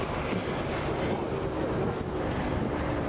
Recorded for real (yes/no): yes